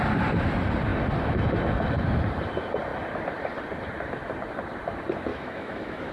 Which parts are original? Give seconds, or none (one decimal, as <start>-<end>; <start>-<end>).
0.0-5.3